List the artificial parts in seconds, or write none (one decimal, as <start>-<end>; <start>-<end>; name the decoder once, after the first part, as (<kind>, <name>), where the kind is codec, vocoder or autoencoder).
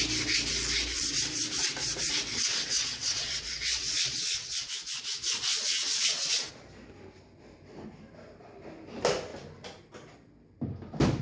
2.5-5.0 (vocoder, WaveNeXt); 5.5-6.5